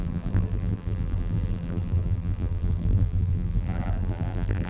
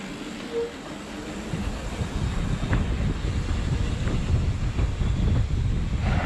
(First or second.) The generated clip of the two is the first